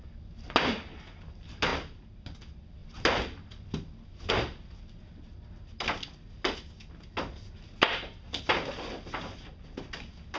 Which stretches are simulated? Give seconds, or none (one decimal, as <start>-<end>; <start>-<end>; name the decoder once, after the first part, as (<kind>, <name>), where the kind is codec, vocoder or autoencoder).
none